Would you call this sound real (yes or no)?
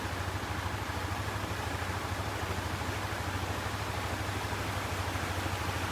yes